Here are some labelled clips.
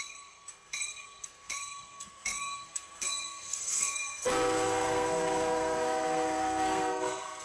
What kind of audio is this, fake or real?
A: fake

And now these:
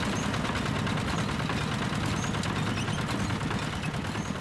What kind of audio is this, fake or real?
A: real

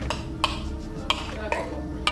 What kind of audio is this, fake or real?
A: real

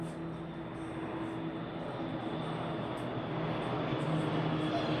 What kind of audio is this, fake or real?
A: real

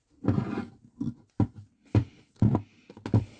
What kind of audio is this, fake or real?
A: real